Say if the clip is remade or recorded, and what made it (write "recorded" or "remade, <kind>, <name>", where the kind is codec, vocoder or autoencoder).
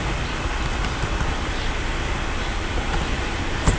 recorded